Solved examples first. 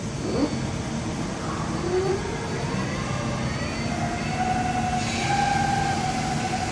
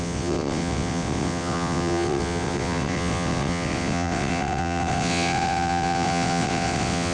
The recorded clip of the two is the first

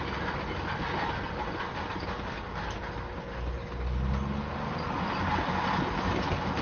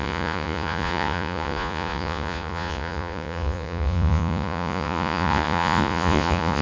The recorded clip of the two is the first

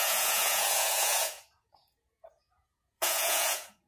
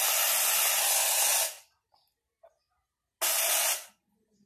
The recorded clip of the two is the second